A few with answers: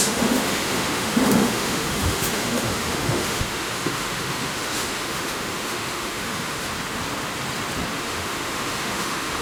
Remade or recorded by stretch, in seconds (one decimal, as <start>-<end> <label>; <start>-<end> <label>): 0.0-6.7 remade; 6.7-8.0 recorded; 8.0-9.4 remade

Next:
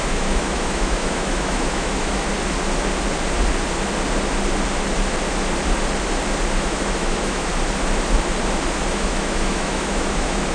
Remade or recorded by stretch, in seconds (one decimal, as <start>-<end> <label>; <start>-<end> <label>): 0.0-2.3 remade; 2.3-6.6 recorded; 6.6-7.5 remade; 7.5-8.9 recorded; 8.9-10.5 remade

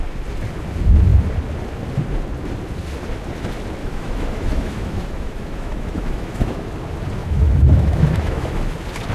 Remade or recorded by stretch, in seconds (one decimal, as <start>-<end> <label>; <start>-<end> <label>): 0.0-3.8 recorded; 3.8-6.7 remade; 6.7-7.2 recorded; 7.2-8.5 remade; 8.5-9.1 recorded

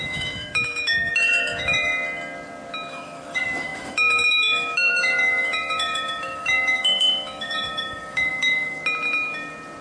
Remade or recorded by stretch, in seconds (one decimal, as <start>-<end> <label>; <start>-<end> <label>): 0.0-1.9 remade; 1.9-2.9 recorded; 2.9-8.8 remade; 8.8-9.8 recorded

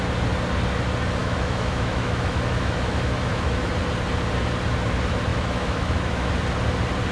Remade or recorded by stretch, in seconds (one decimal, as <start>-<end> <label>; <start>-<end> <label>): 0.0-1.2 recorded; 1.2-3.7 remade; 3.7-5.3 recorded; 5.3-6.3 remade; 6.3-7.1 recorded

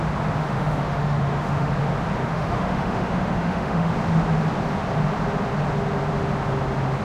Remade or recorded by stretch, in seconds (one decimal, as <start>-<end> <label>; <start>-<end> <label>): 0.0-0.4 recorded; 0.4-1.7 remade; 1.7-2.2 recorded; 2.2-3.9 remade; 3.9-7.0 recorded